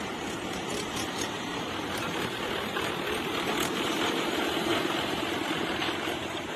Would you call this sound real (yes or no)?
no